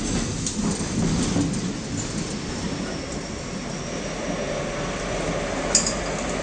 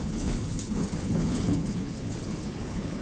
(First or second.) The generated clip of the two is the second